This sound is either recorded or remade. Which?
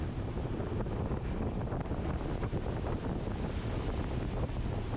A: recorded